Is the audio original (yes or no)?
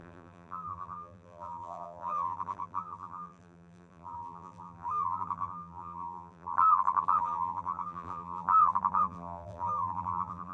no